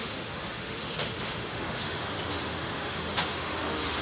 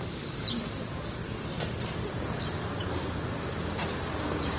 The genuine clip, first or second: second